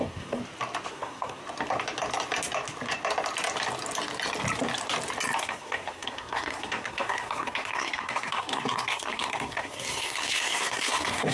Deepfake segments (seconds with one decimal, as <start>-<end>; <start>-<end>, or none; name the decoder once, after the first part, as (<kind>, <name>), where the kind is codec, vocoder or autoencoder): 0.0-0.4 (codec, SNAC); 0.9-1.4; 5.4-11.3